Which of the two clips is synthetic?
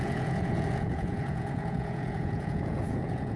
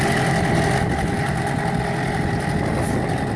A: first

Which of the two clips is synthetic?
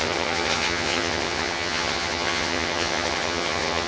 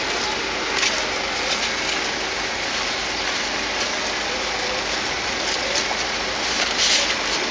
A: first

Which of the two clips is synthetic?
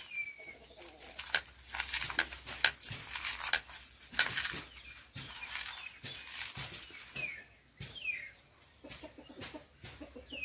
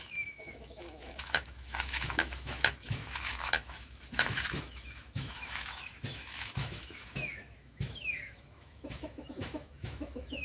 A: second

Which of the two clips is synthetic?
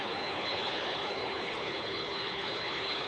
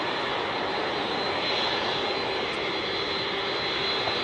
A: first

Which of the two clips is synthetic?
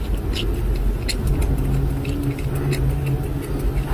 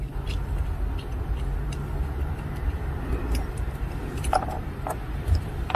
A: second